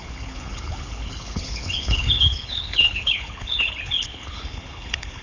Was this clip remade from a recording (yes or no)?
yes